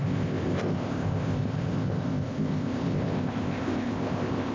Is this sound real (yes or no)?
no